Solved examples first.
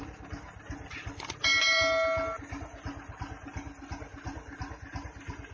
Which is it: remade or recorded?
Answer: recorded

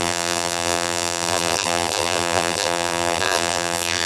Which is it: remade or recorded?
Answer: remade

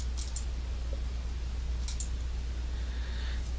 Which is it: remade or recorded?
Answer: recorded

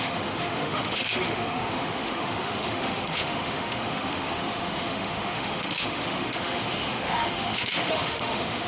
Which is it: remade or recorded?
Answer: remade